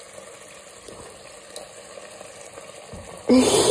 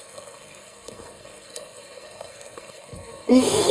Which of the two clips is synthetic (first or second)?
second